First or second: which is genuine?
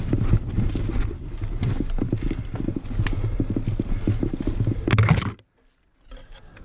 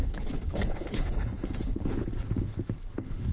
first